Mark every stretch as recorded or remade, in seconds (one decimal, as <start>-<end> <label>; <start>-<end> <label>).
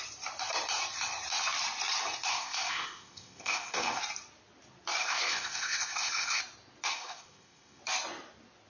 0.0-2.3 recorded; 2.3-4.0 remade; 4.0-5.0 recorded; 5.0-6.4 remade; 6.4-6.9 recorded; 6.9-7.8 remade; 7.8-8.7 recorded